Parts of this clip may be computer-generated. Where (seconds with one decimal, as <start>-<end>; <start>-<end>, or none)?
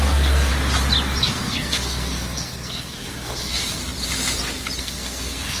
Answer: 0.0-0.5; 1.2-3.8; 4.8-5.6